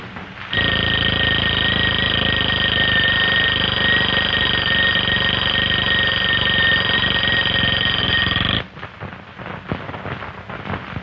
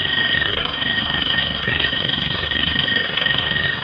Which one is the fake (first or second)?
second